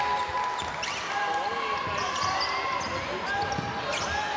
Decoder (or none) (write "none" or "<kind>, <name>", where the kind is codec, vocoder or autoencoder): none